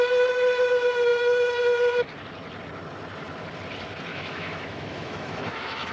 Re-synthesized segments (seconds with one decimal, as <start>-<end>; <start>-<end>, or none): 4.1-5.9

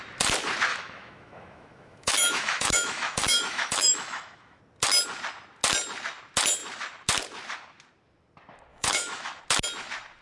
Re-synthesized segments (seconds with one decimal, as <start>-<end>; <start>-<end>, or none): 0.7-4.6; 8.7-9.4